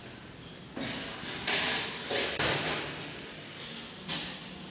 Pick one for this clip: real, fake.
real